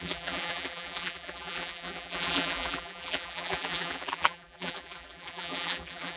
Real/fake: fake